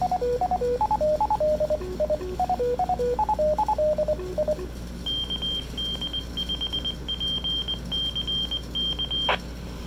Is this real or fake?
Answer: real